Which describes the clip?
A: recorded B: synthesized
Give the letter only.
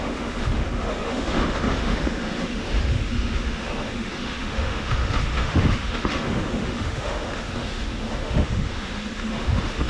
B